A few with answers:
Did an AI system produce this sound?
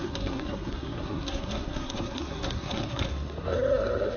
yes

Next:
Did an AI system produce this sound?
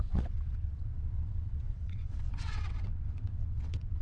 yes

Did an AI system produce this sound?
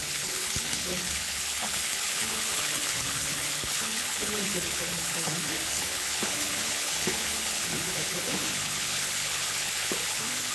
yes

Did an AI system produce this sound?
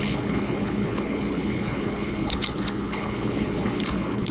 yes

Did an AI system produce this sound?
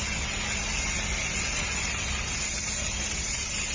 no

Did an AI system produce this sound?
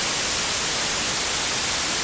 no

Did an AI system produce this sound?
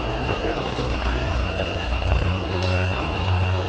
yes